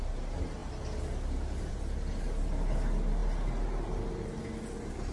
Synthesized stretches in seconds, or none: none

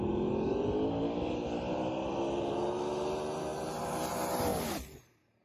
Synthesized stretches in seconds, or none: none